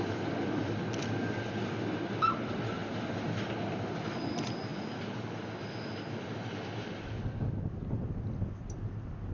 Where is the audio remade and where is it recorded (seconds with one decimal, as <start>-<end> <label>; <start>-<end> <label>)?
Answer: 0.0-9.3 recorded